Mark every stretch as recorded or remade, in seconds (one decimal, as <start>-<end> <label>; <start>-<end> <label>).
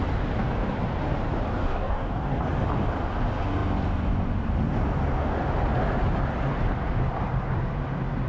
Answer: 0.0-1.6 recorded; 1.6-2.4 remade; 2.4-8.3 recorded